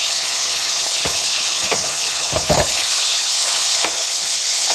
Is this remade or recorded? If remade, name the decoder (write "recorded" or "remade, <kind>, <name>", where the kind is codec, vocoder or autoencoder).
remade, codec, HILCodec